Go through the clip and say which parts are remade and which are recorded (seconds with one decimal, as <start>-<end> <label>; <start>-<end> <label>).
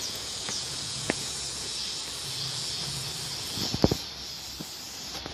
0.0-1.7 remade; 1.7-5.3 recorded